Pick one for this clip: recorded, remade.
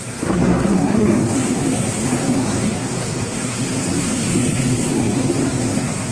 remade